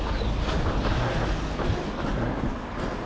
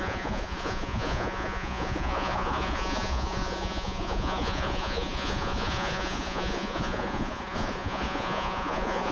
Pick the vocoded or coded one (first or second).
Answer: second